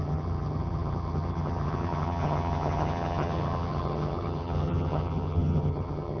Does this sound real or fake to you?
fake